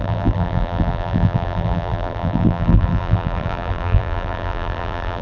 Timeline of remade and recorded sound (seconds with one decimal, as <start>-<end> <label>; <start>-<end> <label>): 0.0-5.2 remade